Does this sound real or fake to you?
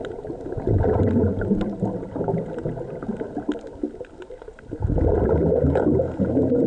real